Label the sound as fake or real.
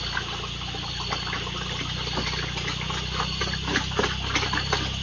real